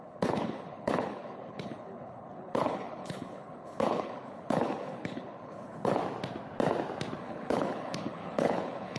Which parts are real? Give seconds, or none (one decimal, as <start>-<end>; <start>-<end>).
6.0-7.2